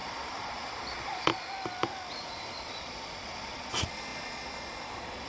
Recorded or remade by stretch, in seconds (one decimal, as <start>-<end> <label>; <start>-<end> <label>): 0.0-1.3 remade; 1.3-2.1 recorded; 2.1-5.3 remade